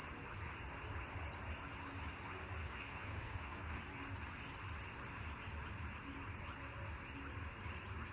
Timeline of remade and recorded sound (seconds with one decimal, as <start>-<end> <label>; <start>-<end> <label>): 0.0-2.6 recorded; 2.6-3.8 remade; 3.8-8.1 recorded